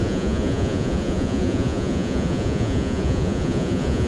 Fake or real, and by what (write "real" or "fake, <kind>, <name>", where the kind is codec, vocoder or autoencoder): fake, vocoder, Vocos